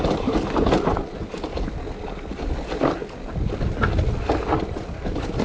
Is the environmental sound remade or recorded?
recorded